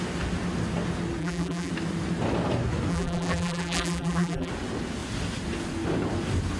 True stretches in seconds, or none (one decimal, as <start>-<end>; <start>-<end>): 0.0-1.2; 1.7-2.9; 4.5-6.6